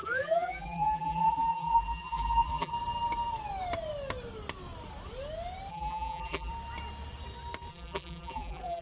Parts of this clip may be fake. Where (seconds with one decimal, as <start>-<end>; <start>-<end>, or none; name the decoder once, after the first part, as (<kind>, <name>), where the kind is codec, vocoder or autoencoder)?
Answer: 0.0-2.7 (vocoder, BigVGAN v2); 5.7-6.5; 7.7-8.8